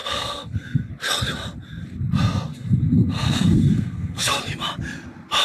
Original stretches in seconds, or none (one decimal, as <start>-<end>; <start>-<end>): 0.9-2.5; 4.4-5.4